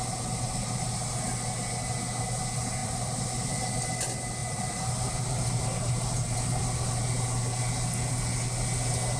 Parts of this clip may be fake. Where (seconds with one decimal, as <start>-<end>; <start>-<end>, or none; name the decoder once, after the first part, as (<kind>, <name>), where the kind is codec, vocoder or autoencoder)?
2.8-3.7 (vocoder, BigVGAN v2); 4.4-7.0